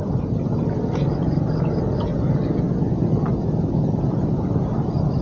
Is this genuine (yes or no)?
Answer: yes